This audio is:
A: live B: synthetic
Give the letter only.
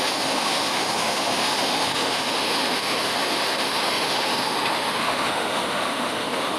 B